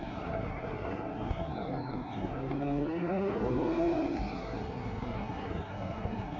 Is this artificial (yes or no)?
yes